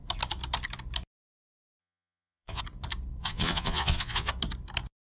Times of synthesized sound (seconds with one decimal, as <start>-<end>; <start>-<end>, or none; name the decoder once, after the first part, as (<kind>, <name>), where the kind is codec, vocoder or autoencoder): 1.8-2.6 (vocoder, Vocos); 3.2-4.3